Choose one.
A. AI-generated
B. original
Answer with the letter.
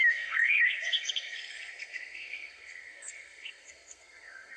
A